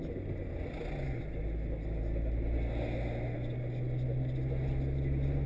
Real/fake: real